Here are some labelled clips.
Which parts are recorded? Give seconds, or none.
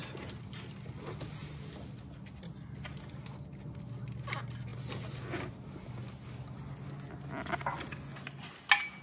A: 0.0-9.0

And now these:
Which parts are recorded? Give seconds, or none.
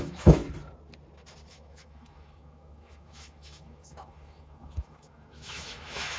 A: 0.4-1.5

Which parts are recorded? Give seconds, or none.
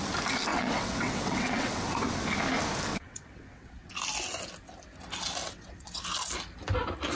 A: 0.0-0.5; 2.0-2.9; 3.9-5.4; 6.0-7.2